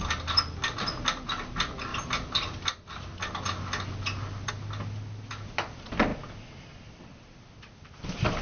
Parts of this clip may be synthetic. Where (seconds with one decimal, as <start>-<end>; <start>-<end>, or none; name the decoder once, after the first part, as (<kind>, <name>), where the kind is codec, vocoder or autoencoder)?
none